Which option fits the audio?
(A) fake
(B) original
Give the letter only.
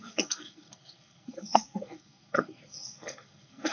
A